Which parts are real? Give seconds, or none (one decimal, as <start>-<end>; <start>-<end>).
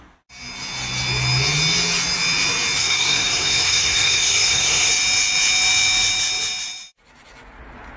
0.0-2.8; 4.9-8.0